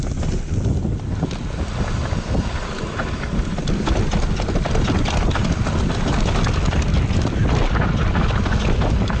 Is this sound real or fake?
real